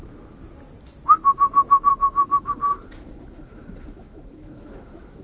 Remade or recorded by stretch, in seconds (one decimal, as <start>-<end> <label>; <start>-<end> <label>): 0.0-1.9 recorded; 1.9-5.2 remade